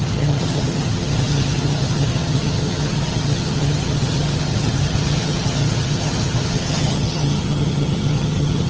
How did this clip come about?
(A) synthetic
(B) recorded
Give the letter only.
A